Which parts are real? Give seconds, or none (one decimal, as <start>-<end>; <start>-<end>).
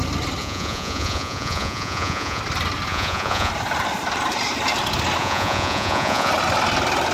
0.0-0.4; 2.4-2.9; 3.5-5.2; 6.3-7.1